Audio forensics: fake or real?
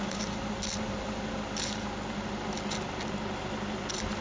real